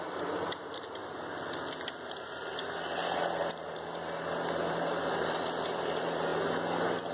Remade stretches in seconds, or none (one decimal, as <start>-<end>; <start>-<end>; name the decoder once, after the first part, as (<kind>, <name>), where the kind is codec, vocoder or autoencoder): 0.0-1.0 (vocoder, BigVGAN v2); 4.7-6.3